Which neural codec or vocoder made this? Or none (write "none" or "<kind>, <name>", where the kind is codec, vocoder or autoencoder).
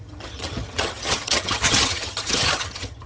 vocoder, HiFi-GAN